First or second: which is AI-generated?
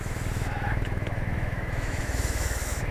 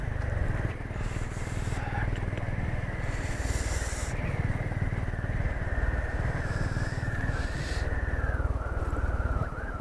first